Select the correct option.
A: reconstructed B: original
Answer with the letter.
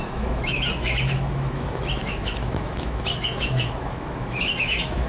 A